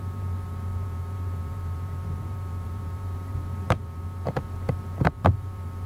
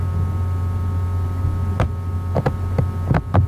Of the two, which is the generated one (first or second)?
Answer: first